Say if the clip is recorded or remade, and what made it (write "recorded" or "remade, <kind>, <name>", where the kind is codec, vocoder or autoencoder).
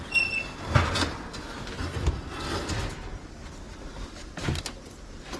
recorded